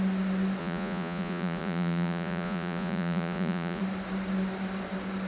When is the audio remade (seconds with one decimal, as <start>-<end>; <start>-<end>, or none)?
0.6-3.8

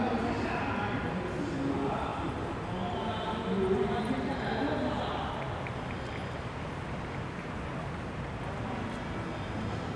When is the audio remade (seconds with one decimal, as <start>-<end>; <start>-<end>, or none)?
none

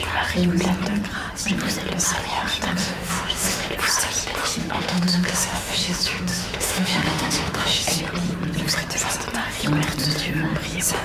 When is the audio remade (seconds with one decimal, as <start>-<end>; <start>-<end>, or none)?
2.8-3.7; 4.6-8.0